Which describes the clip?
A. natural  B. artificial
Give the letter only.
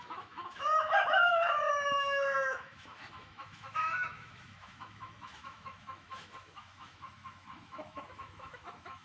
B